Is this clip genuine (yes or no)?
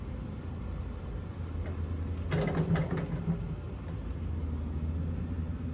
yes